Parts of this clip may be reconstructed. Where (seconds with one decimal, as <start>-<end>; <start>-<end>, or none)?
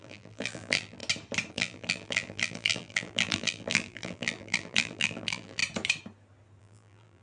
0.0-1.0; 1.5-5.6; 6.6-7.2